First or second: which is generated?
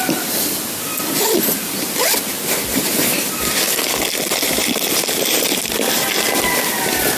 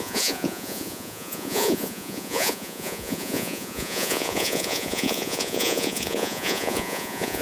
second